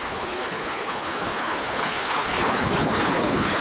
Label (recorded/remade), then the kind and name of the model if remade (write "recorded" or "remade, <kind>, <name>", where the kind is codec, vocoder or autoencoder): remade, codec, HILCodec